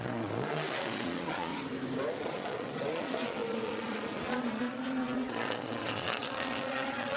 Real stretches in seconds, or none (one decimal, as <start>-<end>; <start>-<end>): 1.5-2.1